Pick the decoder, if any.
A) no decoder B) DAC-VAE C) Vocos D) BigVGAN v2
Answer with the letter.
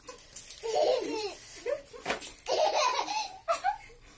A